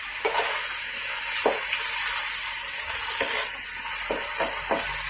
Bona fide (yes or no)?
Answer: yes